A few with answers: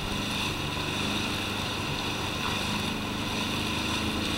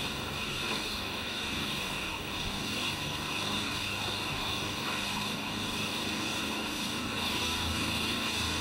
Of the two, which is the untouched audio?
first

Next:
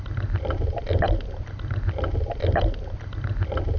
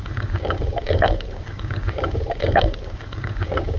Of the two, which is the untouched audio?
first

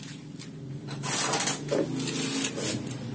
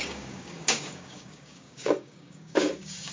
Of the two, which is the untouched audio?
first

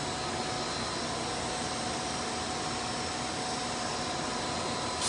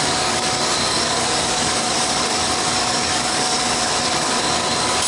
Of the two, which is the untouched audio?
first